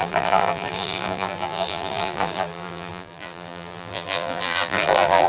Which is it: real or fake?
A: fake